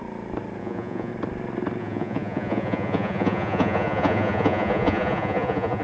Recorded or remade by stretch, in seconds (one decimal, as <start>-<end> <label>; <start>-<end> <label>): 0.0-0.6 recorded; 0.6-1.1 remade; 1.1-1.8 recorded; 1.8-5.8 remade